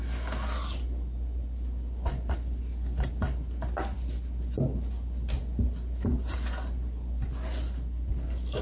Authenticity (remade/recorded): recorded